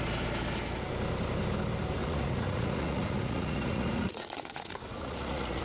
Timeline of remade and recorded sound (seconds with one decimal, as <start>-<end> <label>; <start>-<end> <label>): 0.0-2.0 recorded; 2.0-5.6 remade